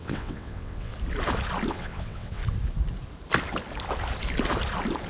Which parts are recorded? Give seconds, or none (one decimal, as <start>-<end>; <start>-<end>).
0.9-1.7; 2.4-5.1